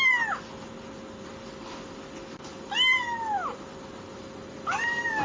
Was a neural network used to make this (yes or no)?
no